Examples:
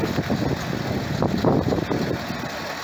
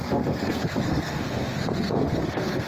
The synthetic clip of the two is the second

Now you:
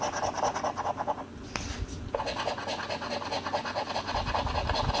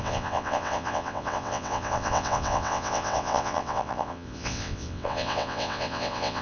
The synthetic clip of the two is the second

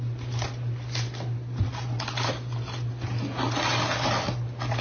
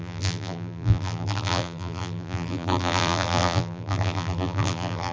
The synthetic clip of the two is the second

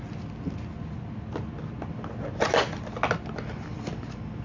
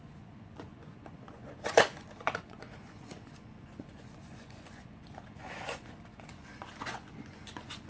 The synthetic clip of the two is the second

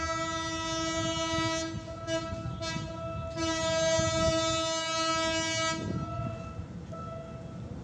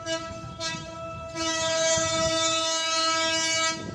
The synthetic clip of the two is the second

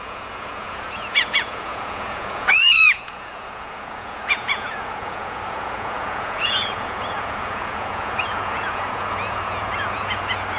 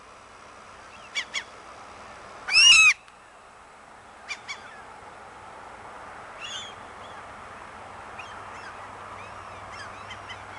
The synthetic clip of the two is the first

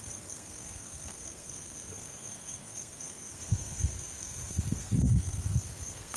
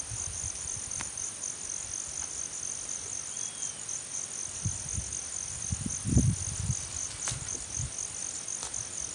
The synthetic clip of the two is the first